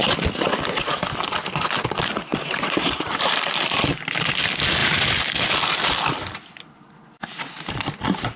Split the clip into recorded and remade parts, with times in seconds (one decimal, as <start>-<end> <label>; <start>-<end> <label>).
0.0-2.3 recorded; 2.3-3.6 remade; 3.6-4.8 recorded; 4.8-5.3 remade; 5.3-8.4 recorded